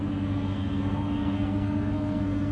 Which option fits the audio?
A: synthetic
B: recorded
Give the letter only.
A